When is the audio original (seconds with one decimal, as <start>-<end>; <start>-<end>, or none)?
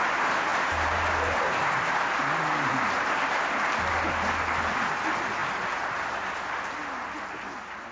0.0-0.5; 1.9-7.9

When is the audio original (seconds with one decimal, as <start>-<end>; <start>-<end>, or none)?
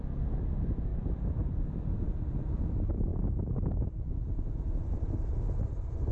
0.0-0.9; 2.0-6.1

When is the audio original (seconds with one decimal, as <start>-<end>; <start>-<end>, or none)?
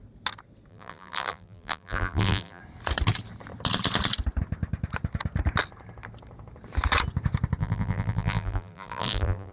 0.0-0.7; 2.6-7.6